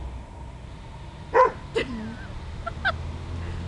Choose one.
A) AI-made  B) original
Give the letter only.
B